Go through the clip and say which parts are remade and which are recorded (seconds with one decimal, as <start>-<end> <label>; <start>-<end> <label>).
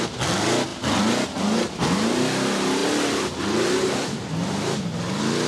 0.0-5.5 recorded